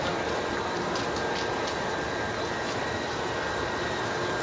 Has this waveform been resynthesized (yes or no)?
no